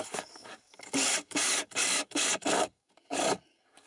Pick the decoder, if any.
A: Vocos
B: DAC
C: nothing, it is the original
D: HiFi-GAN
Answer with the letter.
B